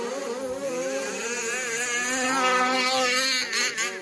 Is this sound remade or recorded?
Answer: recorded